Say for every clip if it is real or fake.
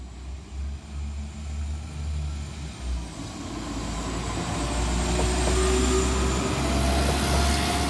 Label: real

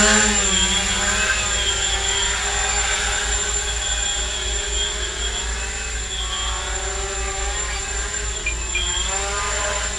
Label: real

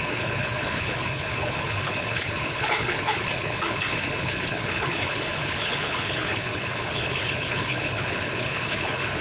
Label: fake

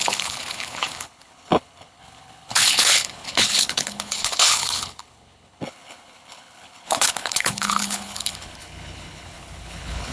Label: fake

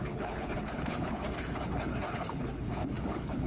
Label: fake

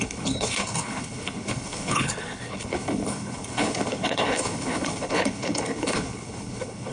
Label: fake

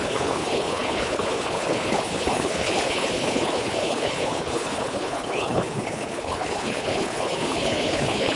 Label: fake